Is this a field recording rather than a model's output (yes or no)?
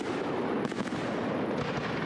yes